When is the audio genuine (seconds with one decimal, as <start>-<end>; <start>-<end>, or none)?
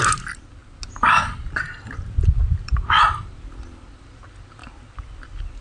0.0-5.6